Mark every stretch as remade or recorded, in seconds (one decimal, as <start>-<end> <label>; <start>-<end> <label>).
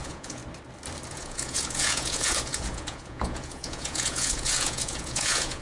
0.0-0.4 remade; 0.4-1.1 recorded; 1.1-5.6 remade